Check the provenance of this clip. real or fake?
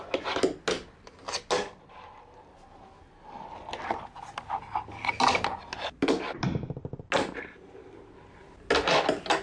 real